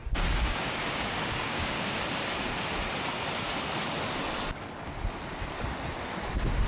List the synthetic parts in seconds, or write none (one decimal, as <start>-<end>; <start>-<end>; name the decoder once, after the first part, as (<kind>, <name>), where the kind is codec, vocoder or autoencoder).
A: 0.0-2.0 (codec, DAC)